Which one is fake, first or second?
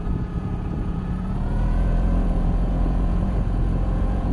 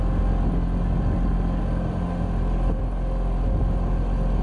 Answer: first